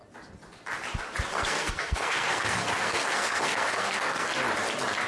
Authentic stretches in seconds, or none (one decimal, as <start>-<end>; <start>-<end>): 0.0-1.3; 4.4-5.1